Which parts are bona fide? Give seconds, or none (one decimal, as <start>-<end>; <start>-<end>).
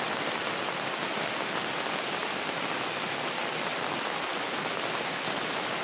0.0-5.8